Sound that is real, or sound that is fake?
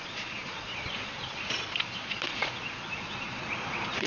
fake